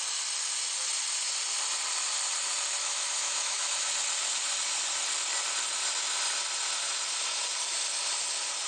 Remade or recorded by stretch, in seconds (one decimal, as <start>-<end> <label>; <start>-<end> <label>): 0.0-2.8 recorded; 2.8-3.9 remade; 3.9-8.7 recorded